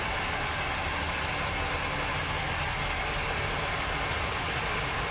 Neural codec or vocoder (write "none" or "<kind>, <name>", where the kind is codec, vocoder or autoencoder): none